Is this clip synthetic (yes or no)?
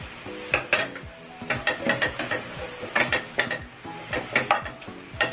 no